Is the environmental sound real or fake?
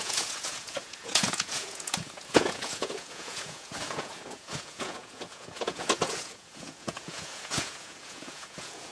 fake